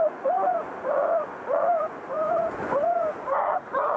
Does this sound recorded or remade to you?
remade